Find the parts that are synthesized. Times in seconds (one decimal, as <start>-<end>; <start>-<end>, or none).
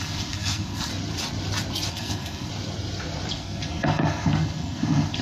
0.0-0.9; 1.9-2.5; 3.3-5.2